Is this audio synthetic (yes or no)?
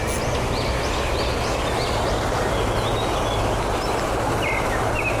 no